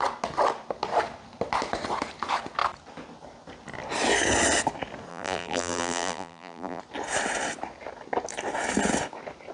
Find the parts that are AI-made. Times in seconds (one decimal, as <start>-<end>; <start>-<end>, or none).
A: 5.1-6.8